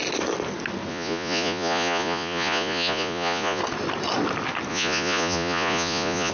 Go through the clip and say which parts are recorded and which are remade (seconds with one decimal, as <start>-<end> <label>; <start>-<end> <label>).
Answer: 0.0-0.9 recorded; 0.9-3.6 remade; 3.6-4.7 recorded; 4.7-6.3 remade